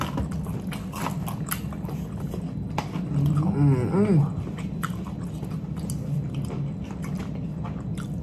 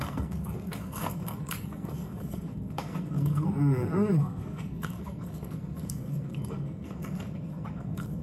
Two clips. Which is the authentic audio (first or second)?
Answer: first